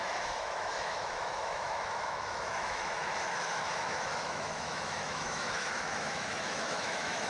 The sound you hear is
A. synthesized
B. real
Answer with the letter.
A